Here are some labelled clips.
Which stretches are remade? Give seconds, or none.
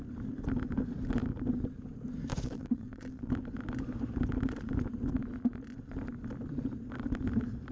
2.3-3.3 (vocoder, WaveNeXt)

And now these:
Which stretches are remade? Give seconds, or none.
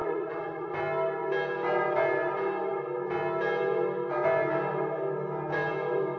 0.0-0.7 (vocoder, Vocos)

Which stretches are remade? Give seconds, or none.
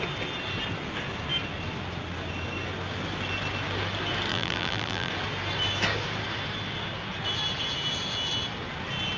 4.3-5.1 (vocoder, BigVGAN v2)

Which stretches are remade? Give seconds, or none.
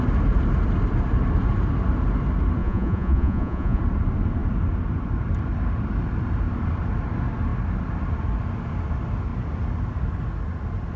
2.6-3.8 (vocoder, Vocos)